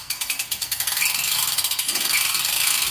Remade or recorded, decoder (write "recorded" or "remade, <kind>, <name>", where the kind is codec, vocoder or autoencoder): remade, codec, SNAC